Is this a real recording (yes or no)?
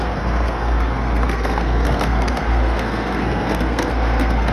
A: no